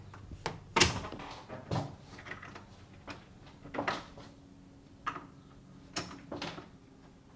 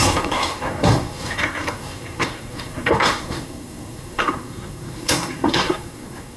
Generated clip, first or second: second